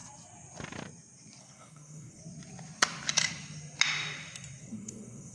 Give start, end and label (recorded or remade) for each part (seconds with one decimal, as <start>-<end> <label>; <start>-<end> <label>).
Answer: 0.0-1.4 recorded; 1.4-2.2 remade; 2.2-4.6 recorded; 4.6-5.3 remade